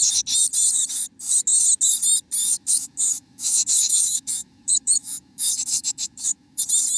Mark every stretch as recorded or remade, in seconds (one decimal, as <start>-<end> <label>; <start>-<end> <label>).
0.0-2.4 recorded; 2.4-6.6 remade; 6.6-7.0 recorded